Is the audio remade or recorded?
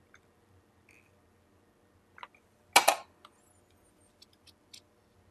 recorded